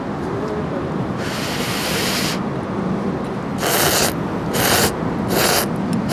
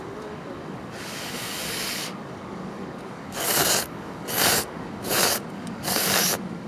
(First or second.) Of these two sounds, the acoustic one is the first